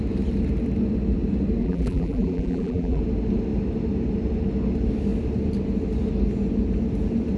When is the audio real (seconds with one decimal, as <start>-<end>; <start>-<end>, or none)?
0.0-1.6; 3.0-7.4